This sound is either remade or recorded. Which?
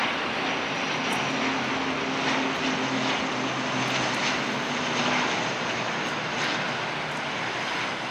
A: recorded